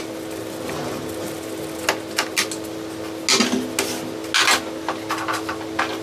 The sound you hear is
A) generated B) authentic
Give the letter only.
B